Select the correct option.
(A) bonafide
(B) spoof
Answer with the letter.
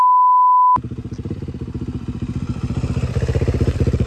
A